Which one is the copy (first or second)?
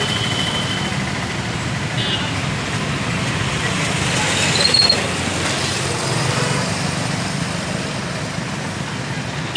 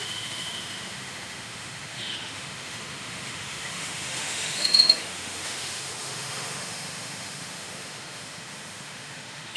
second